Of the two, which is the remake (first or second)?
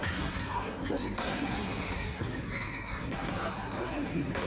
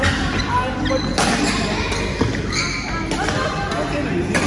first